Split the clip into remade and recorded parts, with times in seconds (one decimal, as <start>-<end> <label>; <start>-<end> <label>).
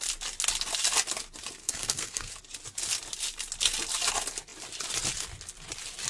0.0-1.6 recorded; 1.6-2.3 remade; 2.3-6.1 recorded